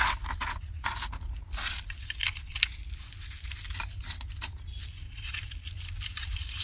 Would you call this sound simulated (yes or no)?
no